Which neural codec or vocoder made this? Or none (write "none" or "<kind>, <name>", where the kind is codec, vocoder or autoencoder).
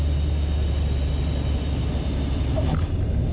none